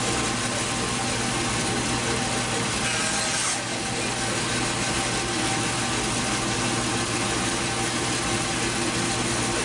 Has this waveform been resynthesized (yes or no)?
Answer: no